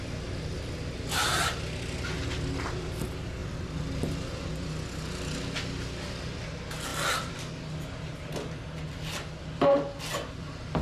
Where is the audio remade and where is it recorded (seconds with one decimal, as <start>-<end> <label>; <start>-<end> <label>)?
0.0-3.4 recorded; 3.4-3.9 remade; 3.9-6.9 recorded; 6.9-10.8 remade